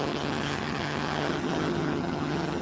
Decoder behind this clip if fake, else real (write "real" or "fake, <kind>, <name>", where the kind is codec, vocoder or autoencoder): fake, vocoder, HiFi-GAN